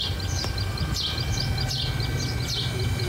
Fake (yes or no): no